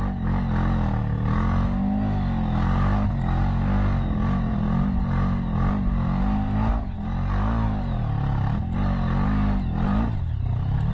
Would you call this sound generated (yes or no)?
no